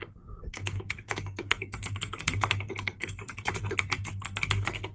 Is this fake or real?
fake